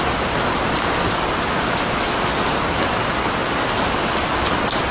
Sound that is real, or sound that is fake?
real